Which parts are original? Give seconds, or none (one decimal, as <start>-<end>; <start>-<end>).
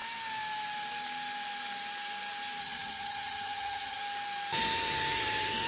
0.0-2.6; 4.0-5.7